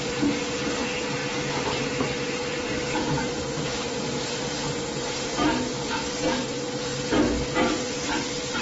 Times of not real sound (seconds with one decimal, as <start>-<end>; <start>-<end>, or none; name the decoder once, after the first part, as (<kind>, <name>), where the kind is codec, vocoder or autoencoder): none